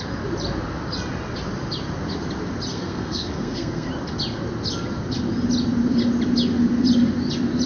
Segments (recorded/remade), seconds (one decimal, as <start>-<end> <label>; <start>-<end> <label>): 0.0-2.7 recorded; 2.7-3.9 remade; 3.9-7.7 recorded